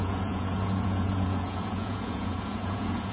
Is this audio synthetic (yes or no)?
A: yes